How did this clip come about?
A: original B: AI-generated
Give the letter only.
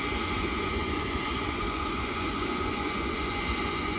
B